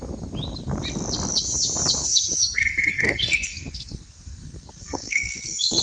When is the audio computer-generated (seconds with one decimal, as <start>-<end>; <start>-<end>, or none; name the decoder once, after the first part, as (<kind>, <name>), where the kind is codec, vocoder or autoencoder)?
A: 2.0-5.8 (codec, SNAC)